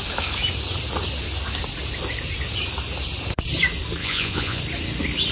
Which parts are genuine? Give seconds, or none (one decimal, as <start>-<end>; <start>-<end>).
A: 0.0-4.0; 4.6-5.3